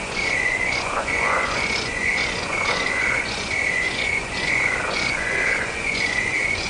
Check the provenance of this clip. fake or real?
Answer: fake